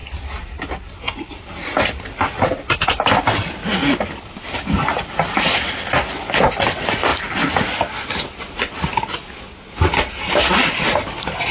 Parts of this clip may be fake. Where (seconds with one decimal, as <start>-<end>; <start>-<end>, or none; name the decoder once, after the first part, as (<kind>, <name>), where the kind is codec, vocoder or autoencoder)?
none